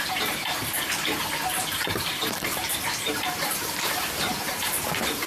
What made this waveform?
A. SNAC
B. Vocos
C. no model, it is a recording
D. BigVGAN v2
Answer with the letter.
D